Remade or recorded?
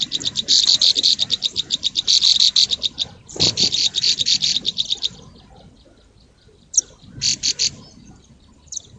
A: recorded